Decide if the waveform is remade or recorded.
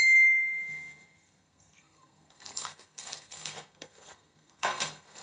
remade